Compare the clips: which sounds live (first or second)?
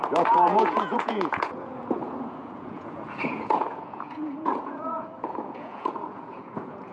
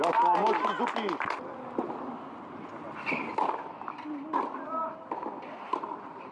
second